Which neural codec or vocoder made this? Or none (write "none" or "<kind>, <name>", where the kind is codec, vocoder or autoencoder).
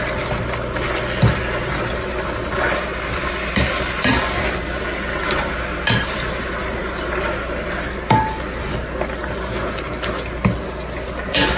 none